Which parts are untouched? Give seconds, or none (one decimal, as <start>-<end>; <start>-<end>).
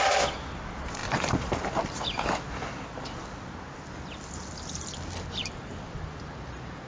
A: 0.0-6.9